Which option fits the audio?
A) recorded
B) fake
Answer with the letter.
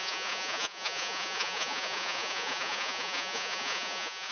B